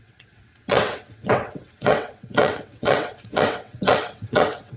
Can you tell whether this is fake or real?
fake